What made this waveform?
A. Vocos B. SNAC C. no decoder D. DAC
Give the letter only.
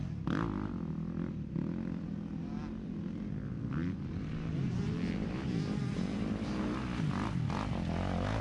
C